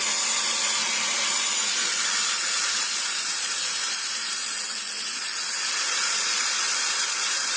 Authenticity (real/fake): fake